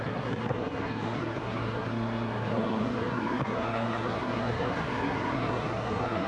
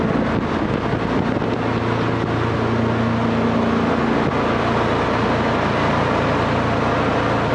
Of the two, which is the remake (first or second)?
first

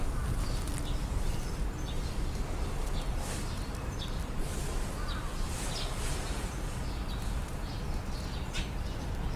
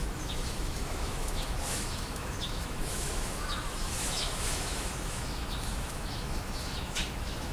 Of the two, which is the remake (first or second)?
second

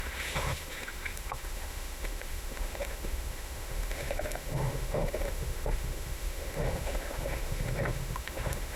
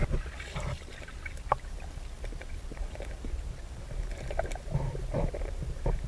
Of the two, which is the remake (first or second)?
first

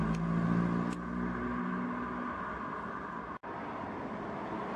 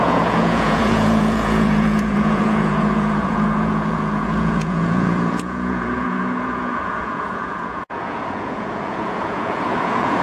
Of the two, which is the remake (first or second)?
second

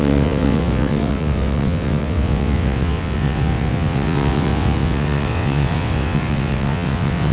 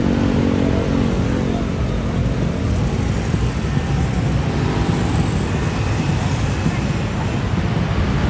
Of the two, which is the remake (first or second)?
first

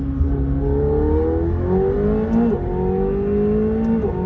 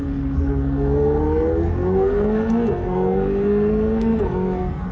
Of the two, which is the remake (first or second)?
second